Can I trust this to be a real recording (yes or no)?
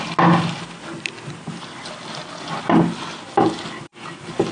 yes